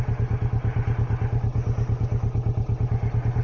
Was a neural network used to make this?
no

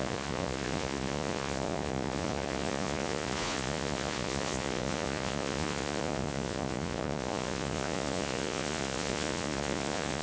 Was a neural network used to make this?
yes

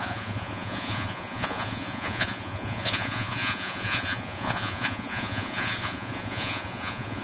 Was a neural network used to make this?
yes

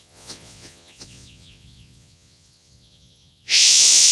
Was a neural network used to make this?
yes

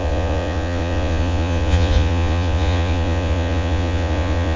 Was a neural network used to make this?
yes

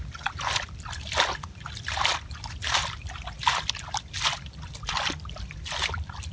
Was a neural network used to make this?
no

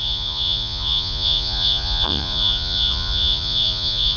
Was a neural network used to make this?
yes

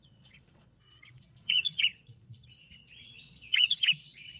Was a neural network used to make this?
yes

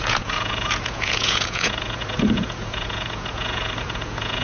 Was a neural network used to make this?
yes